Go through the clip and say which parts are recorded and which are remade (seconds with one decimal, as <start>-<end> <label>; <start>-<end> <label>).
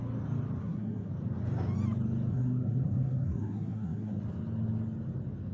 0.0-0.6 recorded; 0.6-1.1 remade; 1.1-2.3 recorded; 2.3-4.2 remade; 4.2-5.5 recorded